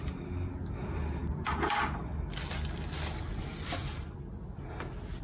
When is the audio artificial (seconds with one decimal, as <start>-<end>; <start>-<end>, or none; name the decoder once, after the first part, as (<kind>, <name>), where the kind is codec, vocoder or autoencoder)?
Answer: none